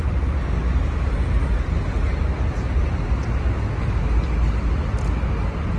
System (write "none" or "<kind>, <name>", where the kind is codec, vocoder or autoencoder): none